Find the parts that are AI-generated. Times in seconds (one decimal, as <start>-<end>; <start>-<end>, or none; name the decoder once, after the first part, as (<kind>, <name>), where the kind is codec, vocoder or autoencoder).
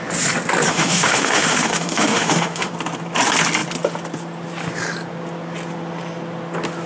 0.7-2.7 (autoencoder, DAC-VAE)